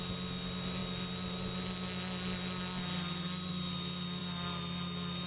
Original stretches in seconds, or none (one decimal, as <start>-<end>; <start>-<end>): 0.0-5.3